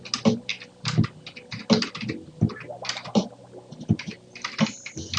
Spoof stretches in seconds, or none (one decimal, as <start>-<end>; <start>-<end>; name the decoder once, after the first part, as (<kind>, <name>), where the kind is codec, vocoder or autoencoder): none